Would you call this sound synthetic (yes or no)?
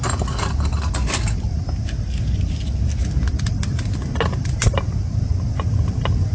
no